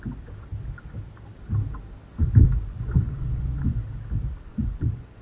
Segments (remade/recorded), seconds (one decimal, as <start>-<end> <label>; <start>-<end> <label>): 0.0-2.1 recorded; 2.1-3.8 remade; 3.8-4.5 recorded; 4.5-5.2 remade